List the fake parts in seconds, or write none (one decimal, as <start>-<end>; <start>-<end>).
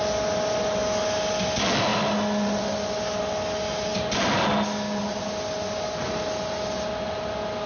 none